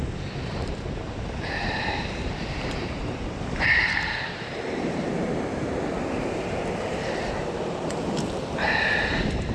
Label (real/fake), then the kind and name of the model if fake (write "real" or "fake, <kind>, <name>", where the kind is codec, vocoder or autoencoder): fake, vocoder, BigVGAN v2